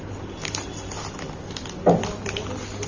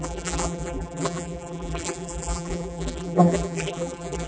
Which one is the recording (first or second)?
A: first